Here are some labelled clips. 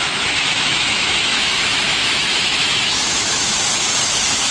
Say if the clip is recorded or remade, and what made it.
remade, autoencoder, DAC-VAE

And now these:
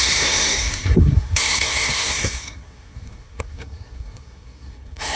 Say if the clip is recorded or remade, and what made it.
remade, codec, SNAC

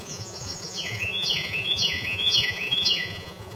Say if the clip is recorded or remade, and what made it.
remade, vocoder, Vocos